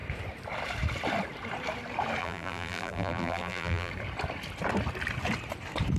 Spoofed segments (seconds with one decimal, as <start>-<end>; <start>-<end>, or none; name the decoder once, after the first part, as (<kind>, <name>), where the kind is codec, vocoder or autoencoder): 2.2-3.9 (vocoder, BigVGAN v2)